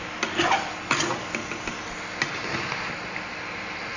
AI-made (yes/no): no